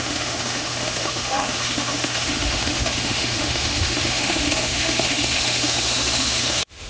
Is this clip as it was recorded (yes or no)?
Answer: no